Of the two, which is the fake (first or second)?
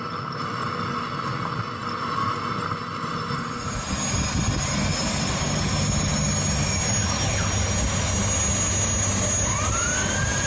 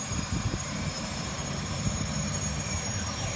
second